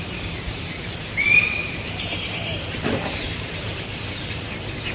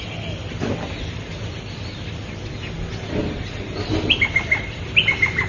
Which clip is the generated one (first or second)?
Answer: first